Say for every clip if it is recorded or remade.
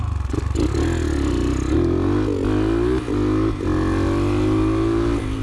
recorded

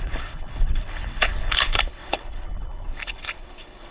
remade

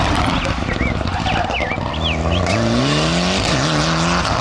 recorded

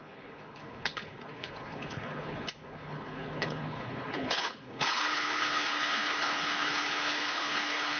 remade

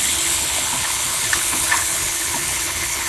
remade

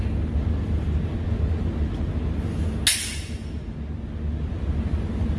recorded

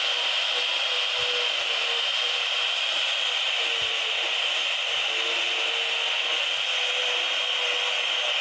recorded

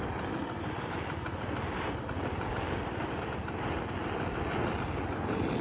recorded